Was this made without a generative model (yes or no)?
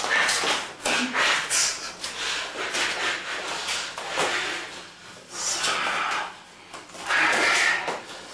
yes